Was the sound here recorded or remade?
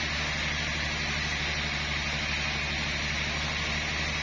recorded